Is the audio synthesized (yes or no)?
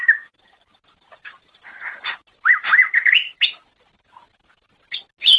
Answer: no